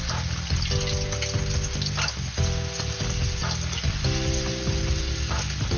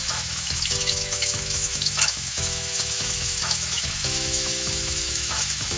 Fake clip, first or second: second